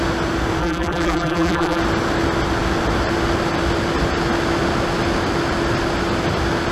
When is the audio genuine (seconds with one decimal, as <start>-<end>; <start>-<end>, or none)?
0.0-0.6; 1.8-6.7